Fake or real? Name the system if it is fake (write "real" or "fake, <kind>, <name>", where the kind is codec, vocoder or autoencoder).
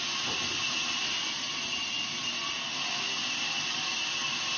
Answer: real